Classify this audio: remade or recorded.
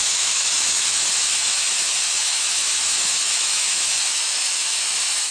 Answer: remade